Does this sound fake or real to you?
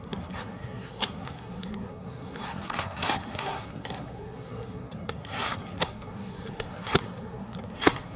fake